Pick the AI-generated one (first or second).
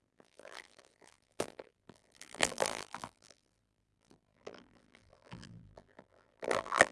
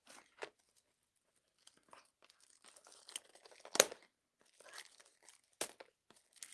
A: first